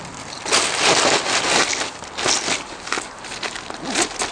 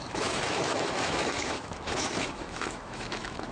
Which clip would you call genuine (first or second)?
first